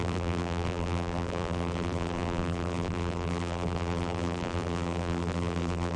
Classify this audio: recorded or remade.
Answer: remade